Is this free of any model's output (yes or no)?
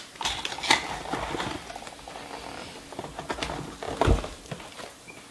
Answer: yes